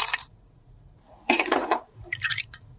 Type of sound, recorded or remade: remade